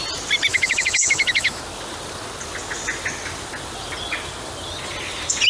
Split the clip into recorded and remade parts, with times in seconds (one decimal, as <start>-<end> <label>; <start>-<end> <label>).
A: 0.0-0.5 recorded; 0.5-1.6 remade; 1.6-5.5 recorded